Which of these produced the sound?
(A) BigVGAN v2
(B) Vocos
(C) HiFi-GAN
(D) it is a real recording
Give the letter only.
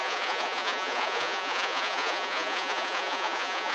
B